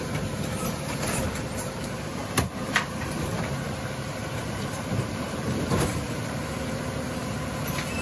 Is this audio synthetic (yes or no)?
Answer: yes